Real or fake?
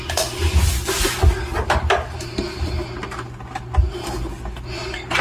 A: real